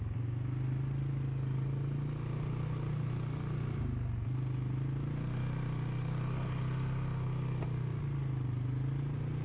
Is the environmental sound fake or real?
real